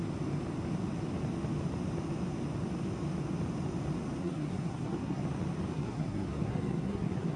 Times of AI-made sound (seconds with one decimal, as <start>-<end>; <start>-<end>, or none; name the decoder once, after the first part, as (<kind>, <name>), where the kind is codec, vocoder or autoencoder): 4.2-5.2 (codec, SNAC); 5.7-7.4